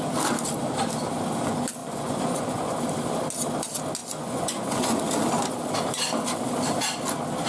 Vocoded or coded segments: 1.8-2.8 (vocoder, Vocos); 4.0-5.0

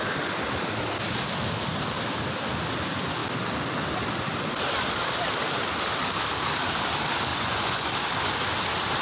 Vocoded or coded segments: 7.3-7.9 (vocoder, Vocos)

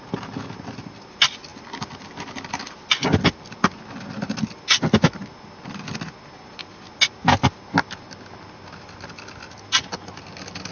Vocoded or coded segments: none

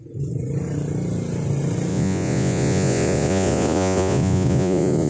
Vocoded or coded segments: 1.9-5.1 (vocoder, Vocos)